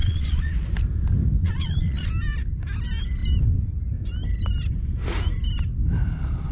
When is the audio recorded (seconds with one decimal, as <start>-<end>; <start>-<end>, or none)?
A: 0.5-1.4; 2.1-6.5